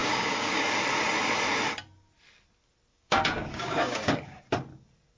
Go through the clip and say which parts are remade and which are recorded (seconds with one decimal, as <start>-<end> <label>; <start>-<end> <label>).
0.0-0.7 remade; 0.7-2.9 recorded; 2.9-4.4 remade; 4.4-5.2 recorded